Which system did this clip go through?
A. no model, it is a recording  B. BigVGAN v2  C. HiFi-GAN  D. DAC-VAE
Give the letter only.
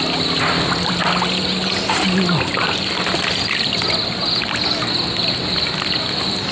A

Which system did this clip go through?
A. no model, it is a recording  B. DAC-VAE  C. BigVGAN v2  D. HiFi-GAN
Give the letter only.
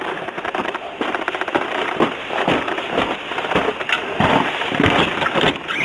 A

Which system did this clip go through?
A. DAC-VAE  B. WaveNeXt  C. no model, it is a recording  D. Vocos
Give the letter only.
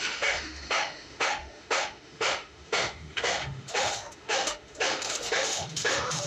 A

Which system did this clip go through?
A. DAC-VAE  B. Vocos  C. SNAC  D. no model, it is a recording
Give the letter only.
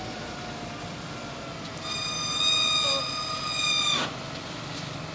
D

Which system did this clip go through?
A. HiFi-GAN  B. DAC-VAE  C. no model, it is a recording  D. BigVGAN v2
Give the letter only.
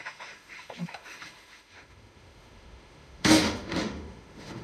B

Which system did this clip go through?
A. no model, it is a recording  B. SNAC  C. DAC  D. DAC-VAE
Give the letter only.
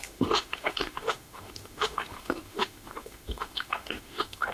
D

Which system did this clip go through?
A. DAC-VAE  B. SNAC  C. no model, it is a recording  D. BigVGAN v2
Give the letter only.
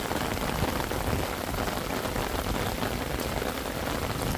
C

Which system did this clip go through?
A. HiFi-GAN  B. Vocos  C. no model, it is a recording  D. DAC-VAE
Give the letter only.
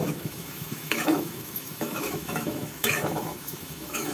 D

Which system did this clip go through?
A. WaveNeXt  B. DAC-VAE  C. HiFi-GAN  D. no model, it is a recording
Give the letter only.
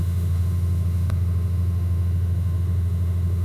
B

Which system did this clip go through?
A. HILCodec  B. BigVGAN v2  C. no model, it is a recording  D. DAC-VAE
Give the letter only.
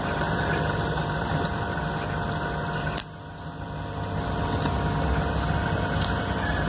C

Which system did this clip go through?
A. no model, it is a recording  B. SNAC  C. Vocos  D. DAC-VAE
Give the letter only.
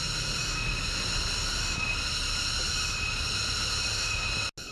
A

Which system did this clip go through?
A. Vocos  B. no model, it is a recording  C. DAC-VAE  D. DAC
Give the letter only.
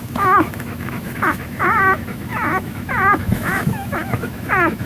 C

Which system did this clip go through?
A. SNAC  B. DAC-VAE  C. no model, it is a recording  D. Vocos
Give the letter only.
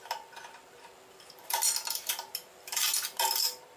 C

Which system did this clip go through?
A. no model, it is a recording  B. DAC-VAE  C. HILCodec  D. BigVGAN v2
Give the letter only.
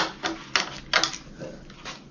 A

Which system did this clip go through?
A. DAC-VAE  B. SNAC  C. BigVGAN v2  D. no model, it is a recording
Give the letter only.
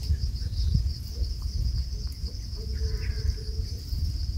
D